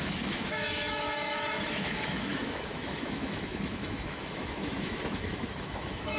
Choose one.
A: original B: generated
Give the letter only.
B